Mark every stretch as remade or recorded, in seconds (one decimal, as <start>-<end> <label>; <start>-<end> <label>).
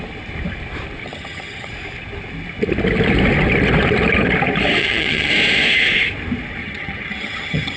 0.0-1.0 recorded; 1.0-1.7 remade; 1.7-4.8 recorded; 4.8-5.3 remade; 5.3-6.6 recorded; 6.6-7.8 remade